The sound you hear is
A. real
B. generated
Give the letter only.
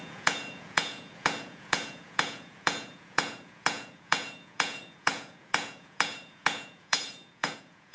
B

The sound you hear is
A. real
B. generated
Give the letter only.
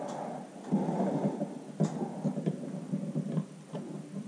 A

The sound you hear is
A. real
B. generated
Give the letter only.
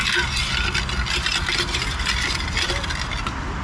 A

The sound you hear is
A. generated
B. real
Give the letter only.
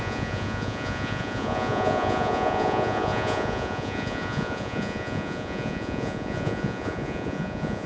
A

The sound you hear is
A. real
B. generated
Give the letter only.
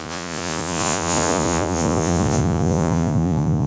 B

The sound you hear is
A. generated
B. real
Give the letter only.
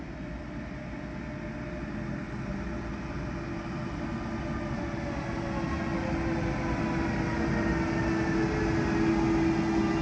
B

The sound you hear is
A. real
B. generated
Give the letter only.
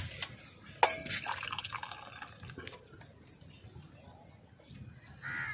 A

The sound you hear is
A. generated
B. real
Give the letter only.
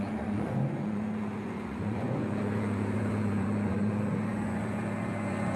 A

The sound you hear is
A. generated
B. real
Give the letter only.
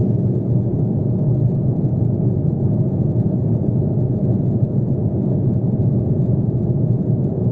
A